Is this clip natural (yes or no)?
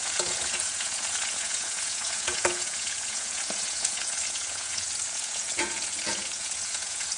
no